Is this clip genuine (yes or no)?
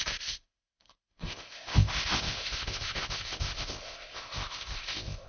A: no